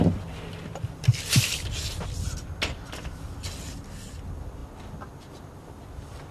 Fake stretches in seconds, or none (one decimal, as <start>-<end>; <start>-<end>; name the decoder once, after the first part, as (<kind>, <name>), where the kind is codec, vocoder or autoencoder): none